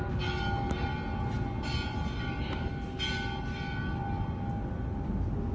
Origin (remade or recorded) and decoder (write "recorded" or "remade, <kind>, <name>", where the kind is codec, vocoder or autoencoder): recorded